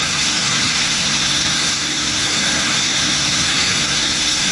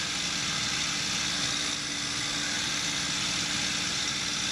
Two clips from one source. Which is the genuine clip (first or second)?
second